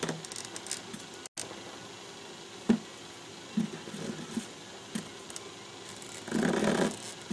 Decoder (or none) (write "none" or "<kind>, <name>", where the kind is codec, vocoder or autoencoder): none